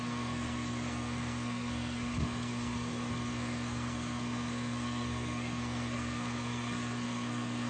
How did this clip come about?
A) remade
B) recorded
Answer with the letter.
A